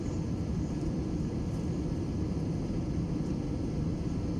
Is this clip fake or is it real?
real